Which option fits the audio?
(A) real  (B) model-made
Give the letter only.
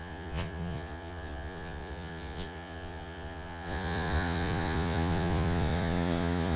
B